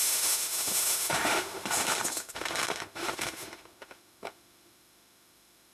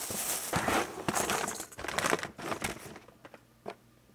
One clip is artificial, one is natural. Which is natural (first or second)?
second